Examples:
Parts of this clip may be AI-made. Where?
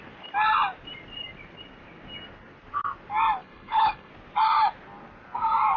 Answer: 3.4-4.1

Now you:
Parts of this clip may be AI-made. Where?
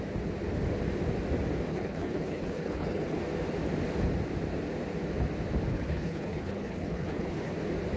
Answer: 1.7-3.2; 5.7-7.5